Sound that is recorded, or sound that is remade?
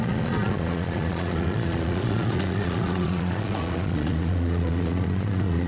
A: remade